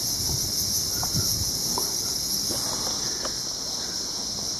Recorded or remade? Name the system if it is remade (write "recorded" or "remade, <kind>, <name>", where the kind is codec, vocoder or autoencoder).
recorded